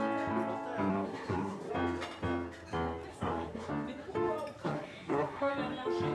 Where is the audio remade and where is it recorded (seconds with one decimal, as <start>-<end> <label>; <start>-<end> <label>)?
0.0-0.9 recorded; 0.9-1.7 remade; 1.7-3.1 recorded; 3.1-3.7 remade; 3.7-4.6 recorded; 4.6-5.5 remade; 5.5-6.1 recorded